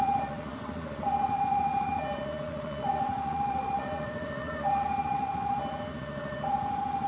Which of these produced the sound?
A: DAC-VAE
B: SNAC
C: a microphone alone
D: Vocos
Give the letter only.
D